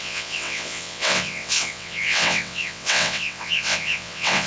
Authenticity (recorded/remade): remade